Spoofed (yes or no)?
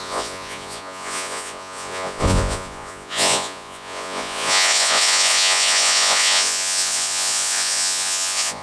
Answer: yes